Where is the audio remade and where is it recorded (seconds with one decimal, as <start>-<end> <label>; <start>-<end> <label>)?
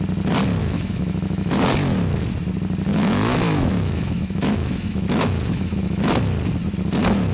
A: 0.0-0.6 recorded; 0.6-1.5 remade; 1.5-2.9 recorded; 2.9-6.1 remade; 6.1-7.3 recorded